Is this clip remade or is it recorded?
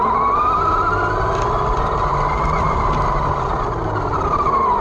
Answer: recorded